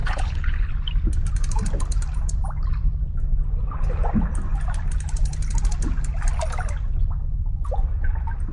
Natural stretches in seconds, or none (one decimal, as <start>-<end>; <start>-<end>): 0.7-8.5